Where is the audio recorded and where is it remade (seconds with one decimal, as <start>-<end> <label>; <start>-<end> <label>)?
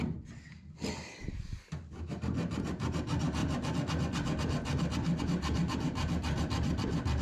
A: 0.0-7.2 recorded